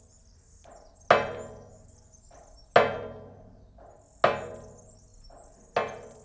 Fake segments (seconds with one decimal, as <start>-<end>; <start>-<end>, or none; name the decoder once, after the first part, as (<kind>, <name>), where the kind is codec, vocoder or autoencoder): none